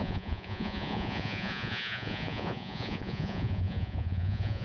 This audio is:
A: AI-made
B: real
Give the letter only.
A